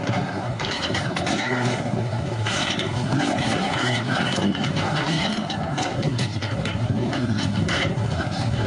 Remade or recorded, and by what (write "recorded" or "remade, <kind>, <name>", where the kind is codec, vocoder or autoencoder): remade, codec, SNAC